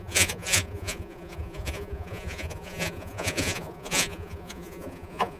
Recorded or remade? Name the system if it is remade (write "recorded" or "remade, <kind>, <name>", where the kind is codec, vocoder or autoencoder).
remade, vocoder, Vocos